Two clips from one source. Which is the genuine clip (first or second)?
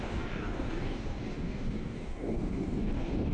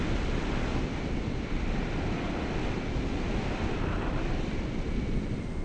second